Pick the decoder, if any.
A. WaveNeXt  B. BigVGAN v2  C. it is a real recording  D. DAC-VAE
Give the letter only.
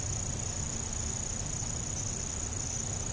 C